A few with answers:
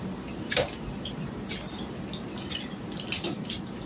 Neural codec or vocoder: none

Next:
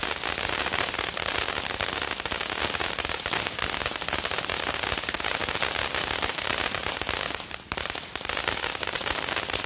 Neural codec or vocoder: none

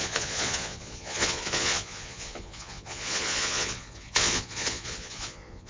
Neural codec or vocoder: vocoder, Vocos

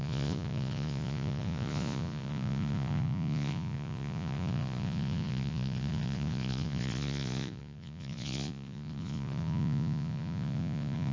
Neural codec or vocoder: vocoder, Vocos